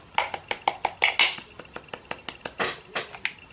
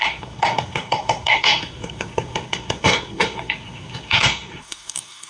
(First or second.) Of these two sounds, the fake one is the second